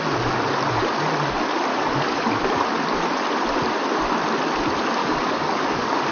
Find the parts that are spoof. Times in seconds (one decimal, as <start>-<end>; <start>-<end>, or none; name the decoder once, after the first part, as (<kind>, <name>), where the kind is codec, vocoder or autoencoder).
1.7-2.3 (codec, DAC); 5.0-6.1